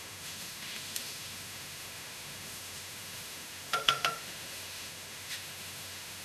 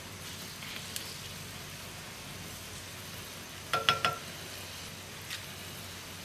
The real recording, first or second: second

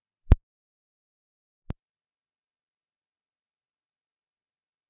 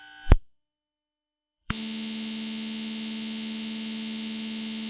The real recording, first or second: first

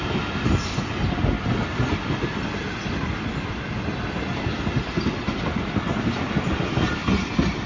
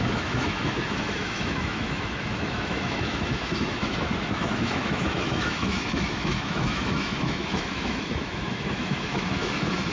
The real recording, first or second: first